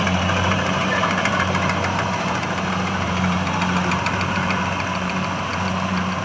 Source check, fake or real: fake